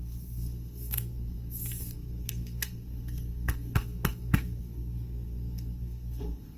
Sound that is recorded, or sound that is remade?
remade